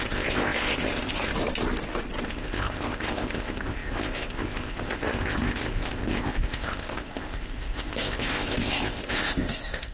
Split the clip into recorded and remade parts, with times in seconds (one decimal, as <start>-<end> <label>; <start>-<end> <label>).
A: 0.0-1.3 remade; 1.3-2.3 recorded; 2.3-9.9 remade